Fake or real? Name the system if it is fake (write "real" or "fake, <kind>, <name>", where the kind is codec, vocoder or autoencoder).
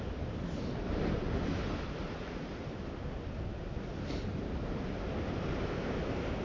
real